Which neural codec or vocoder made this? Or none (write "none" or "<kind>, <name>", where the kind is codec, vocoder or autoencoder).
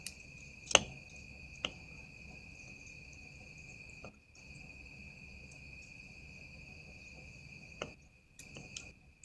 none